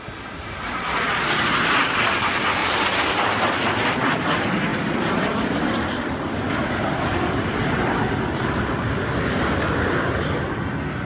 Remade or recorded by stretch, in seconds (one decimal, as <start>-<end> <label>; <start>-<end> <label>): 0.0-4.7 recorded; 4.7-7.6 remade; 7.6-11.0 recorded